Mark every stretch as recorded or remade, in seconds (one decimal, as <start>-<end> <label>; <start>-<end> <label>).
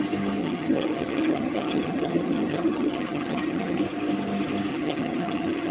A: 0.0-0.4 recorded; 0.4-3.8 remade; 3.8-4.7 recorded; 4.7-5.7 remade